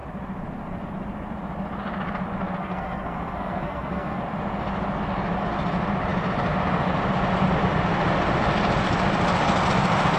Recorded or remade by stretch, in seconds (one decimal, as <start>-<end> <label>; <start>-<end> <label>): 0.0-2.6 recorded; 2.6-4.2 remade; 4.2-10.2 recorded